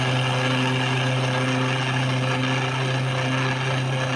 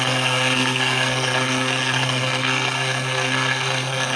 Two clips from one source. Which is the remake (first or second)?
second